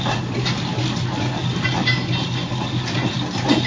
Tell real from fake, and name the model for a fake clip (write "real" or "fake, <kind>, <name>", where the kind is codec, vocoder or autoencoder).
real